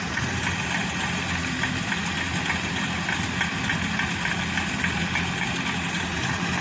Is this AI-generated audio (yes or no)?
no